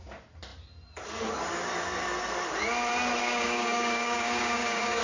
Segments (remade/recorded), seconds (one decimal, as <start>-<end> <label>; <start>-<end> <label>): 0.0-3.2 recorded; 3.2-5.0 remade